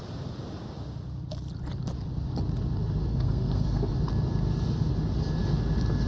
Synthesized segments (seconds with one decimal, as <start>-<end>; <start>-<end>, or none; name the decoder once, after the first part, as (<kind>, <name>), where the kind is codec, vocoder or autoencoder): 3.1-3.9 (codec, SNAC)